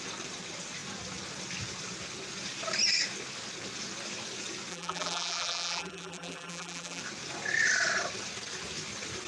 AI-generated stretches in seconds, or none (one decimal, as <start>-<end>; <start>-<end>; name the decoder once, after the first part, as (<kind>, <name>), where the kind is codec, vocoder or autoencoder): 4.7-7.0 (vocoder, BigVGAN v2)